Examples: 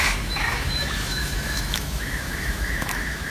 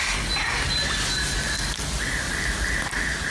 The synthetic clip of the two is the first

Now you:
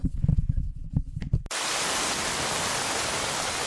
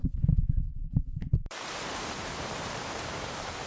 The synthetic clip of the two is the second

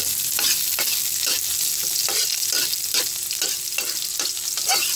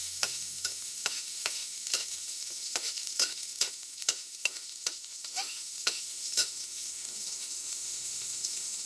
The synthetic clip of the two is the second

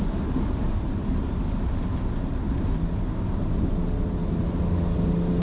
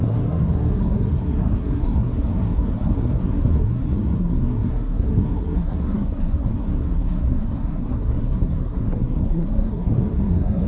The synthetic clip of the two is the second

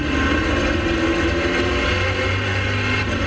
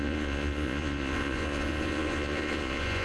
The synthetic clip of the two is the second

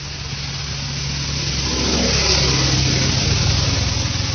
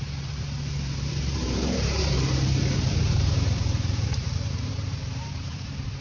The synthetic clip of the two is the second